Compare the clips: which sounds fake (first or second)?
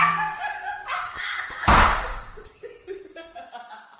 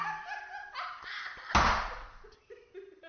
first